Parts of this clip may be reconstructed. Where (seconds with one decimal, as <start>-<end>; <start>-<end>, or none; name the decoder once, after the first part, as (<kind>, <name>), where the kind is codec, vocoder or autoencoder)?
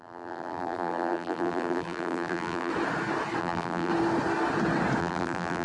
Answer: 0.0-2.7 (vocoder, BigVGAN v2); 3.4-3.9; 5.0-5.6